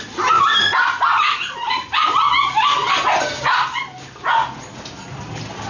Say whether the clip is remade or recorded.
recorded